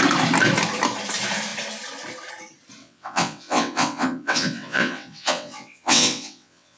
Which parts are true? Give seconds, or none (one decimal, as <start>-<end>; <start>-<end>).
0.0-2.8